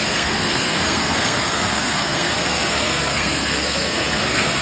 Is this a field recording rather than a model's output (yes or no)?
no